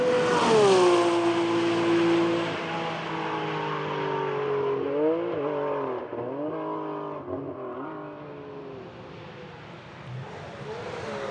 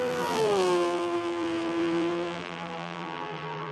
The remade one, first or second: second